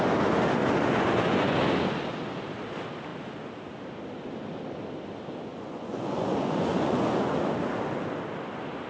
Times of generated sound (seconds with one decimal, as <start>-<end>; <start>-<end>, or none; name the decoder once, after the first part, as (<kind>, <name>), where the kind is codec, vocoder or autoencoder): 0.6-1.6 (vocoder, Vocos); 5.5-7.4